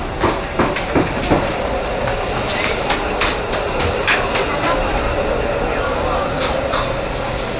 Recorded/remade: recorded